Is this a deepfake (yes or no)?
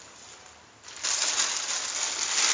no